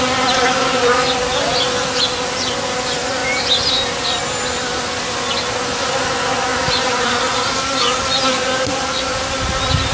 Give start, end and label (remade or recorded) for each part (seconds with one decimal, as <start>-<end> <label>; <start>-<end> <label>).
0.0-6.5 recorded; 6.5-7.1 remade; 7.1-9.9 recorded